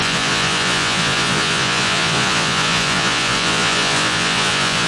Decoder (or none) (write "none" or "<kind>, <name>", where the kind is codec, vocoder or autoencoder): vocoder, Vocos